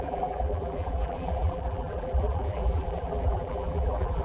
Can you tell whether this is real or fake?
fake